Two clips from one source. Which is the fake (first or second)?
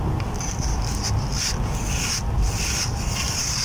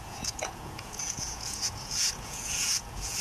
second